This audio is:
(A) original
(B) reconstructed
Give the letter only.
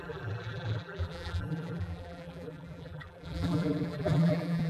B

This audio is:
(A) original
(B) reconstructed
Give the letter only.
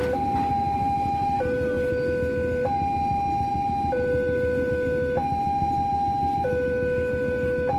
A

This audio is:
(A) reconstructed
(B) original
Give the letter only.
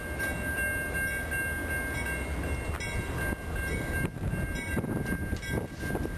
B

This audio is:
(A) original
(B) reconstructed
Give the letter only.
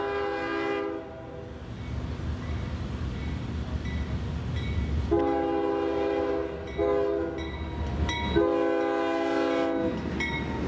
A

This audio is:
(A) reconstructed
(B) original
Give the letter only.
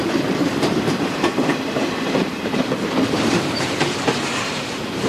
A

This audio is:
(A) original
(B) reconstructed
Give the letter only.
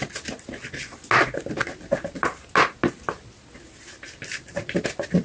A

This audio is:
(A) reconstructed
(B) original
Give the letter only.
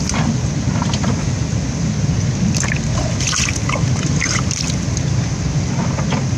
B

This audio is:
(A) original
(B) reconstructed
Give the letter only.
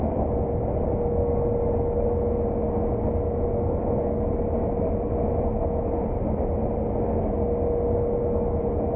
A